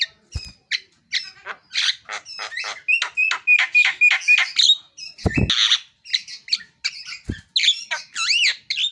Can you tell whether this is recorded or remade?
recorded